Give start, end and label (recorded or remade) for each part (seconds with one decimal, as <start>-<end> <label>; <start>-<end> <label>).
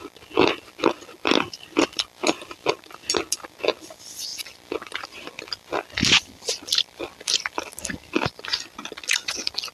0.0-4.3 recorded; 4.3-5.4 remade; 5.4-6.0 recorded; 6.0-7.9 remade; 7.9-9.7 recorded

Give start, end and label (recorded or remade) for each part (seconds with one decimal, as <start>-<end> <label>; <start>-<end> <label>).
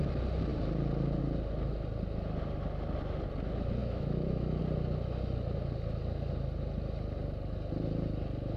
0.0-3.8 recorded; 3.8-4.6 remade; 4.6-8.6 recorded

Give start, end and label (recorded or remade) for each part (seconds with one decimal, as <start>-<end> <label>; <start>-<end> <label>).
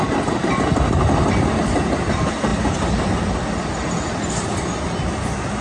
0.0-5.6 recorded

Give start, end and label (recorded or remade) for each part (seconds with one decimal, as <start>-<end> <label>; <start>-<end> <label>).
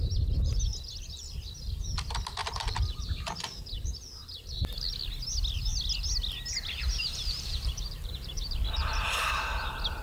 0.0-2.4 recorded; 2.4-3.6 remade; 3.6-6.8 recorded; 6.8-8.8 remade; 8.8-10.0 recorded